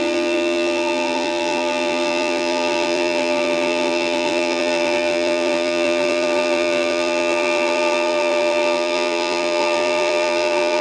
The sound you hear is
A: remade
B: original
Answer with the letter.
A